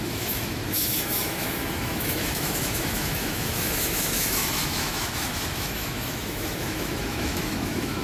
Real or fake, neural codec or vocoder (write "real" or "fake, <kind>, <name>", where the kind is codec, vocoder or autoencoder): fake, autoencoder, DAC-VAE